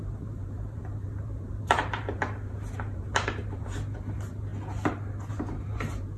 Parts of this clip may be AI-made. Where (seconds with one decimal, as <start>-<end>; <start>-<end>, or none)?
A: 0.0-4.5; 5.3-6.2